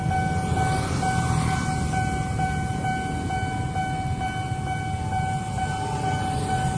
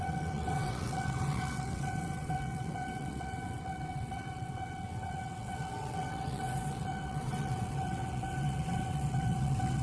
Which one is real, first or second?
first